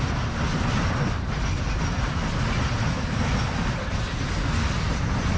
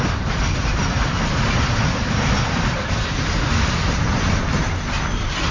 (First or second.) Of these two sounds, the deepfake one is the second